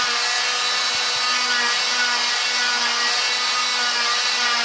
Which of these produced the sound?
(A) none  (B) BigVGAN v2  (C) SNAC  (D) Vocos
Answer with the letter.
A